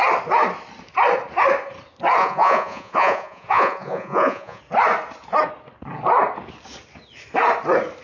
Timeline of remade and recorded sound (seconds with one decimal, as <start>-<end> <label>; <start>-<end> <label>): 0.0-2.2 recorded; 2.2-4.6 remade; 4.6-8.0 recorded